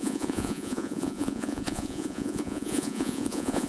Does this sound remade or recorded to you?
remade